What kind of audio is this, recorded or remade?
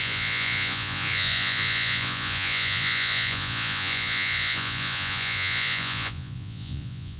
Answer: remade